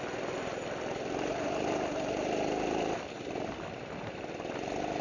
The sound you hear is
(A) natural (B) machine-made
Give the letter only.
A